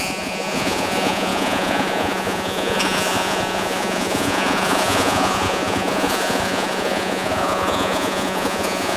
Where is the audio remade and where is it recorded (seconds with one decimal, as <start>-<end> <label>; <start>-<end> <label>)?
0.0-9.0 remade